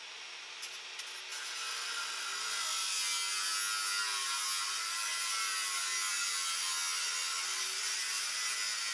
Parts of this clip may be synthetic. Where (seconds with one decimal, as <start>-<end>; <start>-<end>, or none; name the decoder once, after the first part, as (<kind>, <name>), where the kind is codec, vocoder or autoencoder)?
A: none